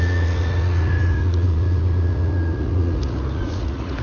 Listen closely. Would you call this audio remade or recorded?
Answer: remade